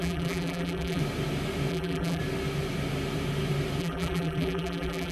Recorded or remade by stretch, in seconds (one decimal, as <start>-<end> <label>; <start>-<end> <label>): 0.0-1.0 remade; 1.0-1.7 recorded; 1.7-2.2 remade; 2.2-3.8 recorded; 3.8-5.1 remade